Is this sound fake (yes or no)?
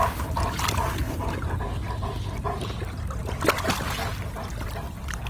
no